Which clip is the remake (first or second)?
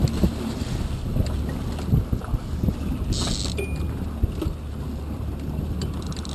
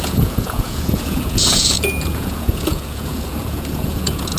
second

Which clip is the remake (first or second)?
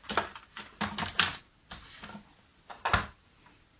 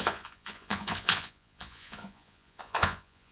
second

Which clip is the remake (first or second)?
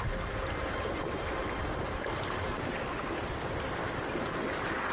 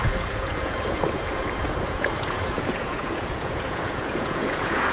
second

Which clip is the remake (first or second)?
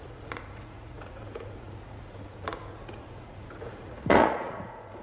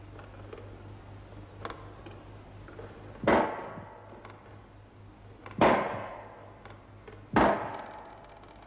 first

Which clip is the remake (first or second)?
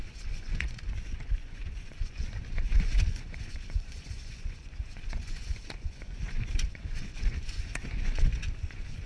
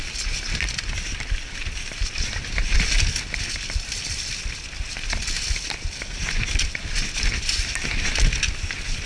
first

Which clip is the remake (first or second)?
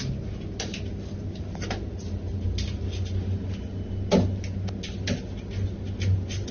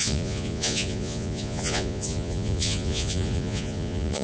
second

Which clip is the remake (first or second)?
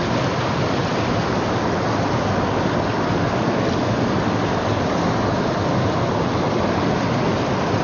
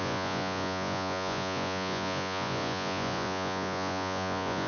second